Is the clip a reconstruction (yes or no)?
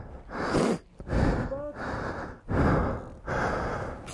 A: no